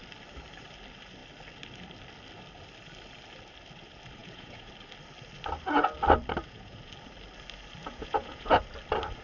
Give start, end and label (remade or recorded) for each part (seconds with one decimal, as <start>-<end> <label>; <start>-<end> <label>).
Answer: 0.0-4.2 recorded; 4.2-4.7 remade; 4.7-6.4 recorded; 6.4-6.9 remade; 6.9-7.8 recorded; 7.8-8.6 remade; 8.6-9.2 recorded